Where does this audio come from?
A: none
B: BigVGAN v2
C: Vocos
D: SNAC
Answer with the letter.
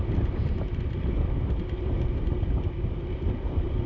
A